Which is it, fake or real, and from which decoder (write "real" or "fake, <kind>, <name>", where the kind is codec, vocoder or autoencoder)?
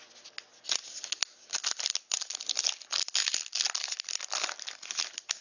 real